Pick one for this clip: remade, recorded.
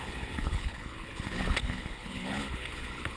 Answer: remade